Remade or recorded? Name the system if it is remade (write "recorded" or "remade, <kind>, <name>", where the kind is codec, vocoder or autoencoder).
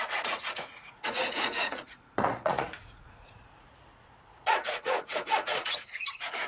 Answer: remade, vocoder, Vocos